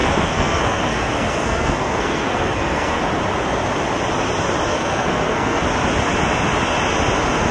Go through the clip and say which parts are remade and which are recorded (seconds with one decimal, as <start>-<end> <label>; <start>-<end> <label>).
0.0-3.0 remade; 3.0-4.7 recorded; 4.7-5.6 remade; 5.6-7.5 recorded